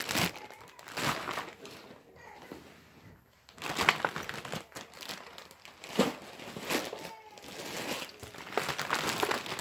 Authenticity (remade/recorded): recorded